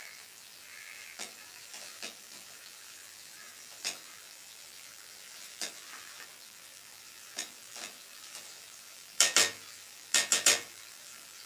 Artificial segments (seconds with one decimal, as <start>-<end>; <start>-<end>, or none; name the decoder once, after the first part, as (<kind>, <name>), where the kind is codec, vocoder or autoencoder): 0.0-11.5 (vocoder, BigVGAN v2)